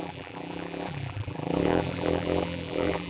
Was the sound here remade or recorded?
remade